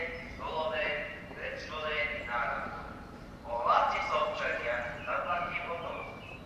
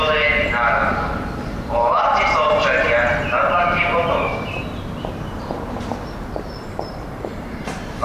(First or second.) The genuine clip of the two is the second